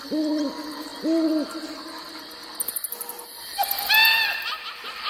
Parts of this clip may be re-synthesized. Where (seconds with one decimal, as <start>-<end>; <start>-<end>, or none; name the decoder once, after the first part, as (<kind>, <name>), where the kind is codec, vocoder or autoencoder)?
0.0-0.9 (vocoder, BigVGAN v2); 2.6-5.1